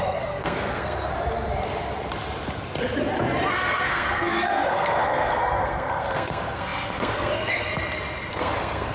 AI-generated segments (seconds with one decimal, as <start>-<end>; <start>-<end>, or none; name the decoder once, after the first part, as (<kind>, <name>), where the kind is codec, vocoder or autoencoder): 0.0-1.1 (codec, SNAC); 3.5-7.7; 8.3-8.9